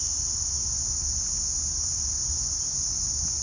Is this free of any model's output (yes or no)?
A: yes